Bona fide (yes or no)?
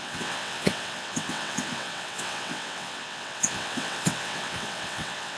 no